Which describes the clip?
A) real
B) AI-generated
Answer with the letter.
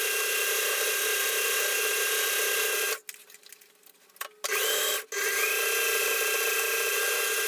A